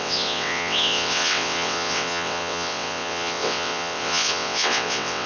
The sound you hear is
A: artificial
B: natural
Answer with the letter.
A